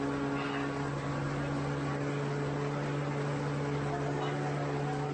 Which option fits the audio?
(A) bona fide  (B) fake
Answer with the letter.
A